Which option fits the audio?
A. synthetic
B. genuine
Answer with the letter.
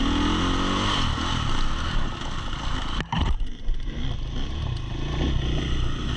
B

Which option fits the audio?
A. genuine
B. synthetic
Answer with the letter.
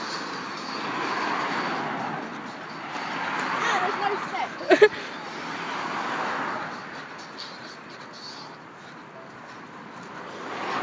A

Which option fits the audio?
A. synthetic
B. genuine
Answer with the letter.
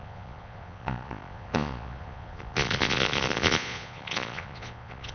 A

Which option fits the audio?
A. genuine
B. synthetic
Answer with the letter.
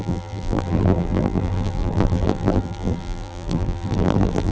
B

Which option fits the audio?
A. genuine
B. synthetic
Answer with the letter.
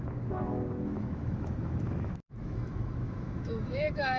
B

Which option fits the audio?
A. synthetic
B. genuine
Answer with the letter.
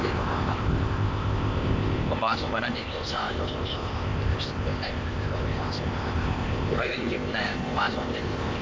A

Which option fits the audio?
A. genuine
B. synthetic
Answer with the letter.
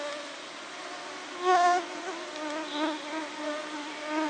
A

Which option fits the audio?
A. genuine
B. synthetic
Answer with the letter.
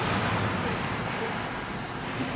A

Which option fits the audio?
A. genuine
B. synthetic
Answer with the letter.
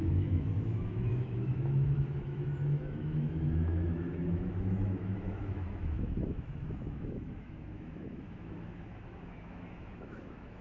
B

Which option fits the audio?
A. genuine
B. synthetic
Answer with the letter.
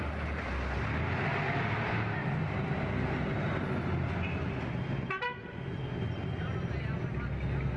A